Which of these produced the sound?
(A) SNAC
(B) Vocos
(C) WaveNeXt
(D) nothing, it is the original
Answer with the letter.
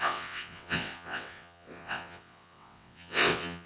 C